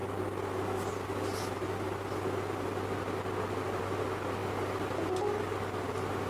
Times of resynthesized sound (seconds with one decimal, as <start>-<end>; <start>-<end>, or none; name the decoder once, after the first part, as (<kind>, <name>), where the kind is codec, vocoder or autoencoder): none